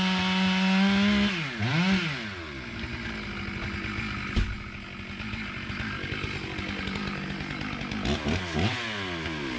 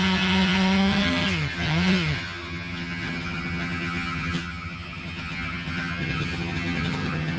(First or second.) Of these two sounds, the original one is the first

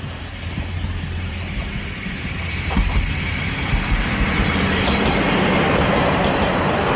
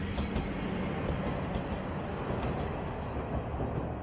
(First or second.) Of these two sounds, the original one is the second